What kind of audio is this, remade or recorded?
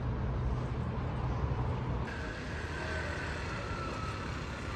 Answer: recorded